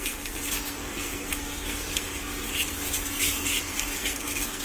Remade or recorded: remade